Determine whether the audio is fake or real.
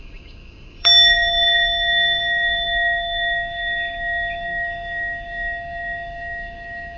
fake